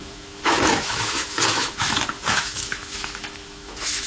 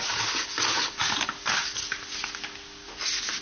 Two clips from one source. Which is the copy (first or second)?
first